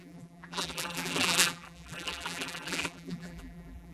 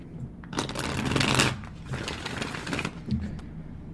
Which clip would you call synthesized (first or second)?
first